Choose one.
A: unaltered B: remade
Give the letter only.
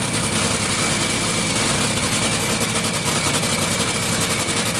A